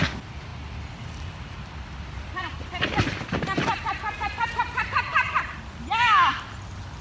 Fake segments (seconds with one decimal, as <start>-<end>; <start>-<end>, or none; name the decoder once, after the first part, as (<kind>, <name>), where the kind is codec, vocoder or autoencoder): none